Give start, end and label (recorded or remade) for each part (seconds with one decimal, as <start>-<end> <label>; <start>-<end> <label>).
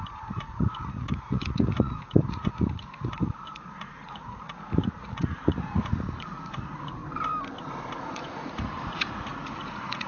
0.0-7.0 remade; 7.0-8.0 recorded; 8.0-10.1 remade